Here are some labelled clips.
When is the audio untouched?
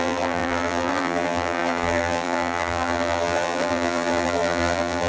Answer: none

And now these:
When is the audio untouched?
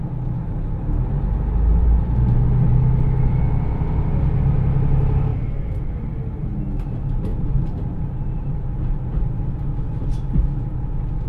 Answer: 0.0-5.3; 5.9-7.3; 9.1-11.3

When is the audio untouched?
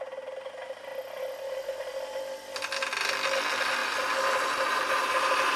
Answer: 0.0-3.8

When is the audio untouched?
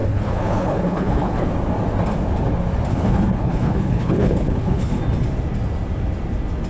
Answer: 1.5-2.9; 5.0-6.7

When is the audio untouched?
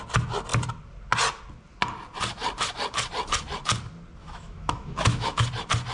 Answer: 0.0-4.2; 5.4-5.9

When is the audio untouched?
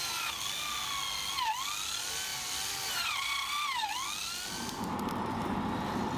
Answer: 0.0-6.2